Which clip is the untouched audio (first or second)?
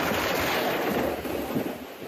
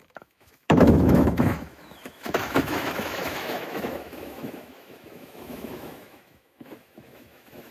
first